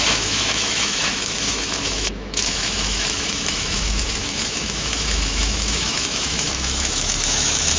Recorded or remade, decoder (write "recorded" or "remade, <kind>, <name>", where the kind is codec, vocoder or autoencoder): remade, autoencoder, DAC-VAE